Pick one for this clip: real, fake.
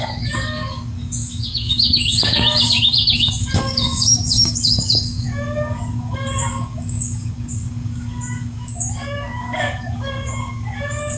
fake